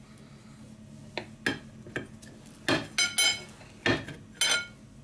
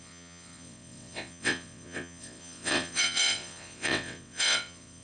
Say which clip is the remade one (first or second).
second